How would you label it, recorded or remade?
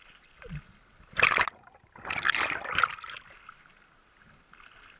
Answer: recorded